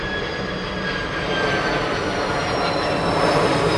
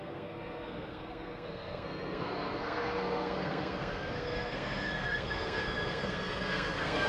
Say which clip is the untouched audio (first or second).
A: first